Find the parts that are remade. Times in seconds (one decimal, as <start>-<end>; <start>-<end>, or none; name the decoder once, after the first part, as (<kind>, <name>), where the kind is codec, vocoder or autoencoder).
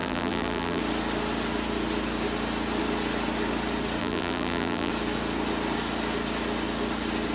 0.0-0.8 (vocoder, BigVGAN v2); 4.0-4.9